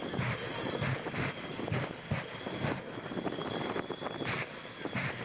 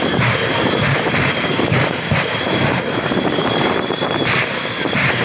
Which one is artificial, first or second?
second